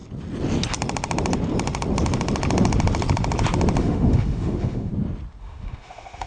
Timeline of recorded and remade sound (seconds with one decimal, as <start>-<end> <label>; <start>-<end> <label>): 0.0-3.8 recorded; 3.8-4.9 remade; 4.9-5.4 recorded; 5.4-6.3 remade